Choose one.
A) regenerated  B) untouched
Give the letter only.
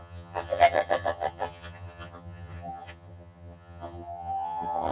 A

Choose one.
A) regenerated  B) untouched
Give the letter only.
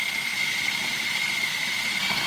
B